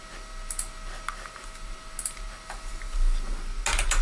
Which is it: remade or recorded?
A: recorded